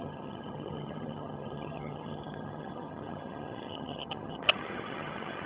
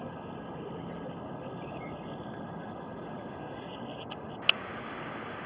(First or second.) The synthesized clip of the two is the first